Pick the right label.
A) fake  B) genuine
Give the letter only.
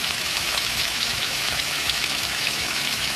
A